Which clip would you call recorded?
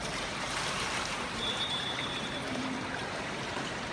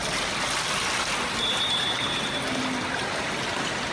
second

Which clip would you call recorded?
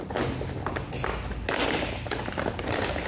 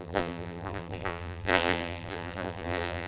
first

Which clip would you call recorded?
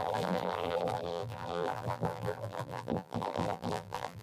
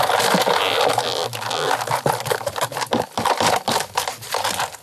second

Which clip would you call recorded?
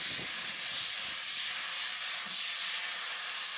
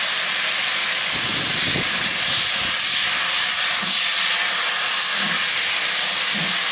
first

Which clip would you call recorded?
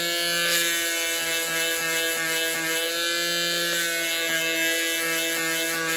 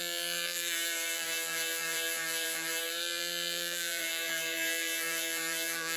first